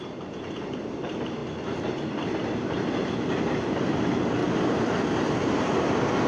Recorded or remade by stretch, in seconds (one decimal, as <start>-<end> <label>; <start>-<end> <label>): 0.0-1.4 remade; 1.4-3.6 recorded; 3.6-4.4 remade; 4.4-6.3 recorded